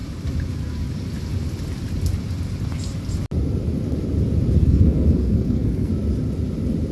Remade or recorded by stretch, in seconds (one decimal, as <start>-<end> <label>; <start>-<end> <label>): 0.0-4.6 recorded; 4.6-5.9 remade; 5.9-6.9 recorded